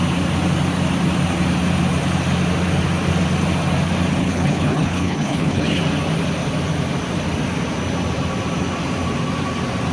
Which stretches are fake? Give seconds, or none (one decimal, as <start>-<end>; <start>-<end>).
4.2-5.8